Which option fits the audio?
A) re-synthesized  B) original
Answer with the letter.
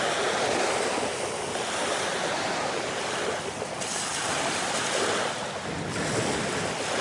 B